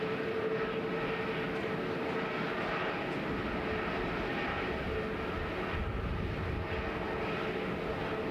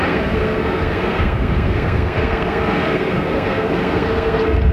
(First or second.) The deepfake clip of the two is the second